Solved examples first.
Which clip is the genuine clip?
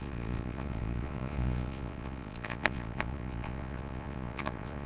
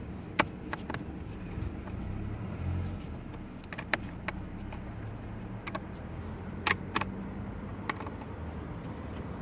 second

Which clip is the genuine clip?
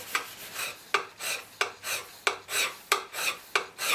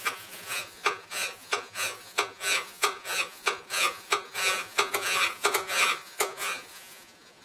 first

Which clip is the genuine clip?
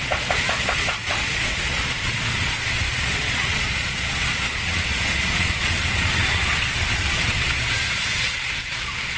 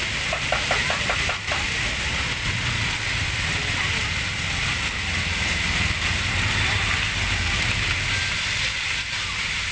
second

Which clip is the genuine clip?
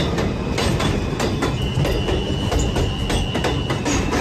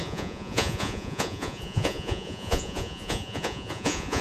first